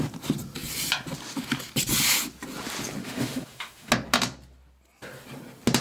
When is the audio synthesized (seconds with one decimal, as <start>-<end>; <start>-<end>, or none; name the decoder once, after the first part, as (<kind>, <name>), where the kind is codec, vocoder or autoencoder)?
3.0-3.9 (autoencoder, DAC-VAE)